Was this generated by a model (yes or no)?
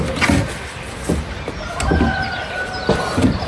no